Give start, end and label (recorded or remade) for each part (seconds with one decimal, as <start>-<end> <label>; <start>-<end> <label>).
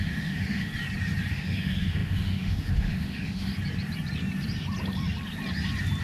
0.0-0.7 remade; 0.7-1.3 recorded; 1.3-3.5 remade; 3.5-6.0 recorded